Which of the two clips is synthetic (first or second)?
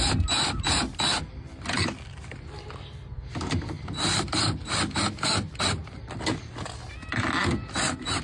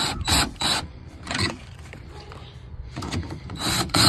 second